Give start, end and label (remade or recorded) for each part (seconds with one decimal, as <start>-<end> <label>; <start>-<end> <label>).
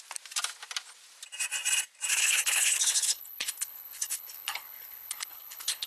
0.0-2.1 recorded; 2.1-5.9 remade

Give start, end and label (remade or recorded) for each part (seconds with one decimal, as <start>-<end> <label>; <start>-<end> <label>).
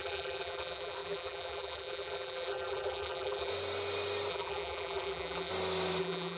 0.0-3.5 remade; 3.5-4.3 recorded; 4.3-5.5 remade; 5.5-6.0 recorded; 6.0-6.4 remade